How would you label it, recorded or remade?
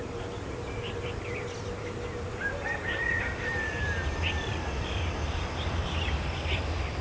remade